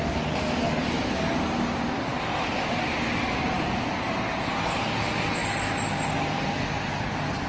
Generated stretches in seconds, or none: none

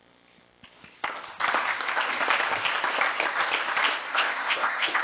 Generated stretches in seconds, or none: 4.1-5.0 (codec, ZipCodec)

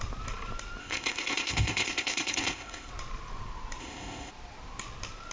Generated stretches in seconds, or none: 0.8-2.9 (codec, ZipCodec); 3.8-4.3

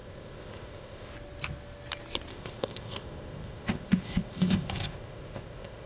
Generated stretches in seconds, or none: 0.0-1.1 (codec, ZipCodec); 2.3-5.9